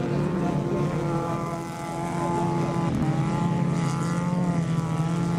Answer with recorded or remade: recorded